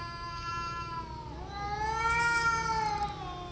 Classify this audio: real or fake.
real